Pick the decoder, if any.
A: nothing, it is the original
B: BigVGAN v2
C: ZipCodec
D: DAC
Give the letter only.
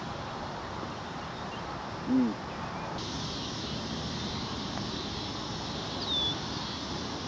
A